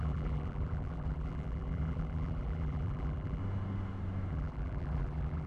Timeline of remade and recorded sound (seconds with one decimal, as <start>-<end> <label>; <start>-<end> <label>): 0.0-3.4 remade; 3.4-4.3 recorded; 4.3-5.5 remade